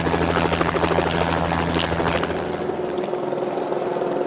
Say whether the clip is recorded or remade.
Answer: recorded